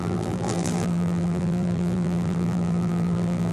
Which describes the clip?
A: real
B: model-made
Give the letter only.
B